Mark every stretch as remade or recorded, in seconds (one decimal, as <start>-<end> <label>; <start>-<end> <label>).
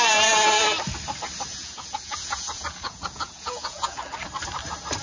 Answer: 0.0-1.5 recorded; 1.5-4.0 remade; 4.0-5.0 recorded